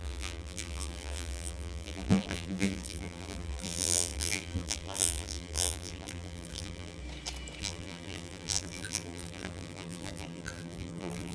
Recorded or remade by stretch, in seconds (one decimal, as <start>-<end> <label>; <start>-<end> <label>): 0.0-7.0 remade; 7.0-7.6 recorded; 7.6-11.3 remade